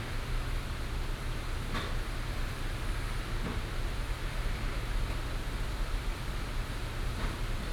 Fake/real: fake